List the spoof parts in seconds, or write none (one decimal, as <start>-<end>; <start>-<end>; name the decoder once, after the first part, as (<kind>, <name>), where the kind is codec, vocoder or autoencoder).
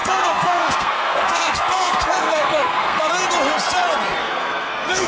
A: 0.0-3.1 (codec, SNAC); 4.2-5.1